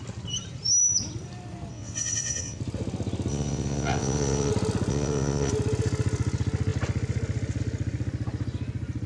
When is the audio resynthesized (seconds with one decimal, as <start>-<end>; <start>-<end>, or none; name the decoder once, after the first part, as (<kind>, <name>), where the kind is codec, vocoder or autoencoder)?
1.7-2.6 (vocoder, WaveNeXt); 3.3-4.5; 4.9-5.5

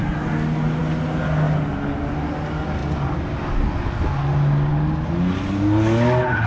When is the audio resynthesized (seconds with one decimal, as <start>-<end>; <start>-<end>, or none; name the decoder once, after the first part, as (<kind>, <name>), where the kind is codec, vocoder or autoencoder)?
none

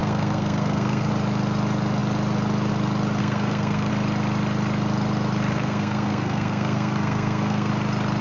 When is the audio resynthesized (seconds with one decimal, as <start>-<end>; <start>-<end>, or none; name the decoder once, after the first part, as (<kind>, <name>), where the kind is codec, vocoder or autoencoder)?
0.0-1.1 (codec, SNAC); 3.2-3.9; 5.5-7.7

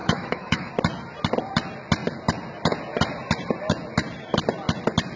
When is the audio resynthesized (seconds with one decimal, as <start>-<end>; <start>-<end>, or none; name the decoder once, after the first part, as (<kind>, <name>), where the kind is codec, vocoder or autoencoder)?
0.0-0.7 (autoencoder, DAC-VAE)

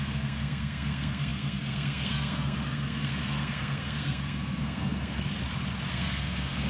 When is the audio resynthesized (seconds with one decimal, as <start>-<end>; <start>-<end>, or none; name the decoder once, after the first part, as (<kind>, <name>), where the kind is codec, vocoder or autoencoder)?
0.0-5.3 (codec, SNAC); 5.9-6.7

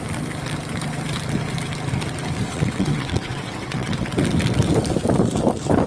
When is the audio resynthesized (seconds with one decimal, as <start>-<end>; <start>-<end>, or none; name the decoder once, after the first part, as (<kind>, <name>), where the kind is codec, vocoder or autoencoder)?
2.5-4.1 (vocoder, WaveNeXt)

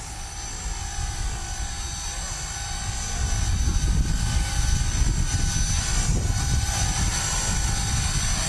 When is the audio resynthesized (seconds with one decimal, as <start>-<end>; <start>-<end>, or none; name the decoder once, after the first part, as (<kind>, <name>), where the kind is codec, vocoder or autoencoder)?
6.1-7.2 (vocoder, BigVGAN v2)

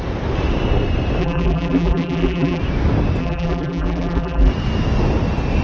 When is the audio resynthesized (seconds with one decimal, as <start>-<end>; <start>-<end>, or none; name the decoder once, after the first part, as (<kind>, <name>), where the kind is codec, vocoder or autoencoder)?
1.2-2.6 (vocoder, BigVGAN v2); 3.2-4.5